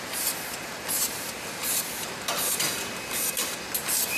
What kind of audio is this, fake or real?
real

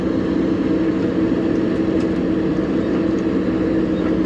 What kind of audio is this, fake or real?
real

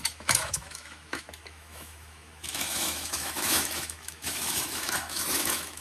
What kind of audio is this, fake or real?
fake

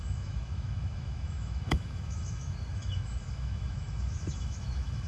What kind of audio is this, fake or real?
fake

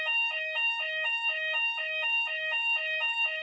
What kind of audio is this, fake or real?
fake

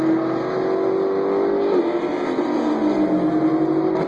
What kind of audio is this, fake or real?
real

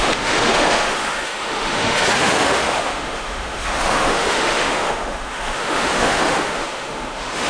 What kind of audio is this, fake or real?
fake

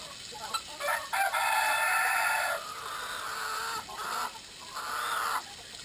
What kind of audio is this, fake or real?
real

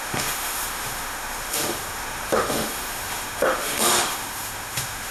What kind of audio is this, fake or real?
fake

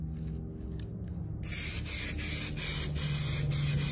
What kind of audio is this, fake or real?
real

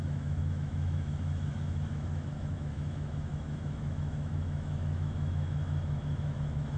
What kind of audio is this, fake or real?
fake